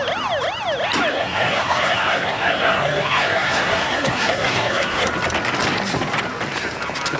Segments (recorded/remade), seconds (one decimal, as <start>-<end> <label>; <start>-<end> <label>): 0.0-1.1 recorded; 1.1-5.1 remade; 5.1-7.2 recorded